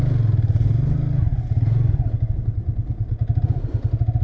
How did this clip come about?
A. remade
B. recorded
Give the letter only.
B